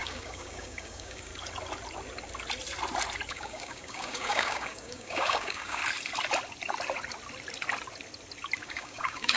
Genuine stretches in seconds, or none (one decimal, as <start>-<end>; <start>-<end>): 1.3-3.3; 5.8-8.6